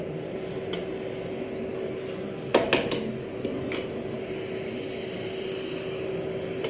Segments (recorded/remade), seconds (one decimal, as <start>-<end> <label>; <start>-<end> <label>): 0.0-6.7 recorded